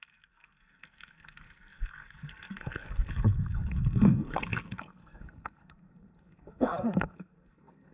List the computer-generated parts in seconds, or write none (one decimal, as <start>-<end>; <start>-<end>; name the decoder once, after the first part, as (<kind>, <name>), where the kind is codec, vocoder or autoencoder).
0.0-7.9 (codec, SNAC)